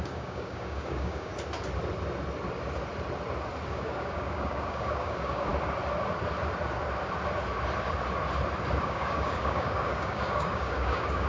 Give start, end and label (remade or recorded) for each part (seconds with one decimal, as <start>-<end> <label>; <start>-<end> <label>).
0.0-1.3 remade; 1.3-3.7 recorded; 3.7-5.5 remade; 5.5-8.8 recorded; 8.8-11.3 remade